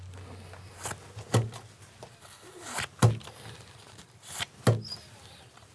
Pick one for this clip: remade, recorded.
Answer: recorded